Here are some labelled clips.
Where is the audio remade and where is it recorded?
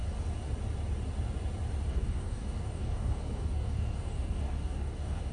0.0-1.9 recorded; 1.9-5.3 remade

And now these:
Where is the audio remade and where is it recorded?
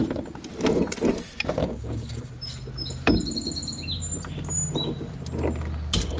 0.0-1.6 recorded; 1.6-2.3 remade; 2.3-6.2 recorded